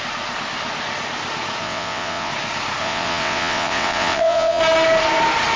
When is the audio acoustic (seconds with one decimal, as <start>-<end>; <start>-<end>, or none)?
0.0-1.6; 2.3-2.8; 4.6-5.6

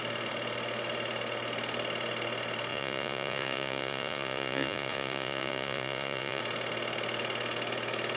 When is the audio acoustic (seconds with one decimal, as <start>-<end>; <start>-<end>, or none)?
0.0-2.7; 6.4-8.2

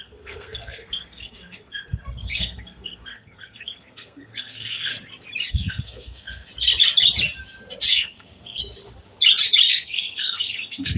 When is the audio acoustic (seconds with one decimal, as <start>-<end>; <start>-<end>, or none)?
4.9-5.5; 6.5-7.9; 8.6-9.7

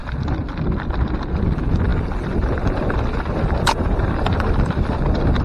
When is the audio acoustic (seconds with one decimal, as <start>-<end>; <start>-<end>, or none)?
0.0-0.8